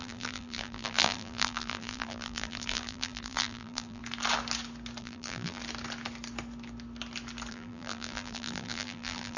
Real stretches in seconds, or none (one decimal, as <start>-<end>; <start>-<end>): 4.0-5.0; 5.6-7.5